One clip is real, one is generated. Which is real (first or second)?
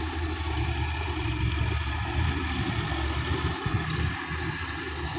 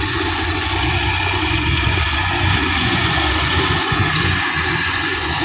first